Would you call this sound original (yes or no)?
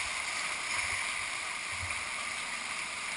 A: yes